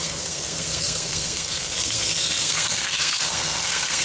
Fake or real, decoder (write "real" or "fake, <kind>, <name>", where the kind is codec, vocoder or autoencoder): fake, codec, SNAC